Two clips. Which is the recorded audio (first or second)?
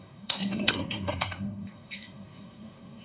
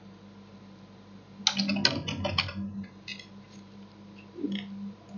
second